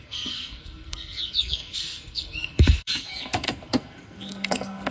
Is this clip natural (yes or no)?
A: no